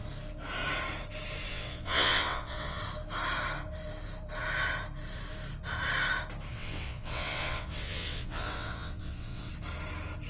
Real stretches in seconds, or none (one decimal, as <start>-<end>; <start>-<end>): 0.0-1.5; 2.8-6.5; 9.5-10.3